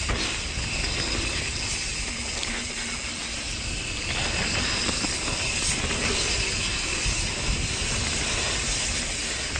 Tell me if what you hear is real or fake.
real